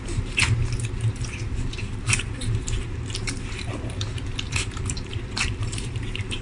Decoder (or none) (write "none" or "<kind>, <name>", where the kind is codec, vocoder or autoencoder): vocoder, BigVGAN v2